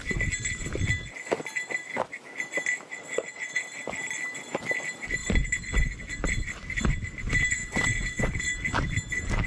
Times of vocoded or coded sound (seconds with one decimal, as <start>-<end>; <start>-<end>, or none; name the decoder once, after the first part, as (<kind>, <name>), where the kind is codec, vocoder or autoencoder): 2.9-3.6 (vocoder, WaveNeXt); 7.6-8.4

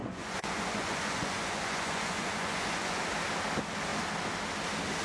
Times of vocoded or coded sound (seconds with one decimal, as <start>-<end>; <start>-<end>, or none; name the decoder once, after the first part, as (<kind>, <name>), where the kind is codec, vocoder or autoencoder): 0.0-3.0 (vocoder, Vocos)

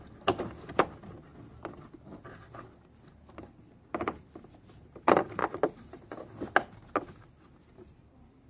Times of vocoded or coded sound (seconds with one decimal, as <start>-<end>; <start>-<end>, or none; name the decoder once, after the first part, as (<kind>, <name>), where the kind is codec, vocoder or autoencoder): none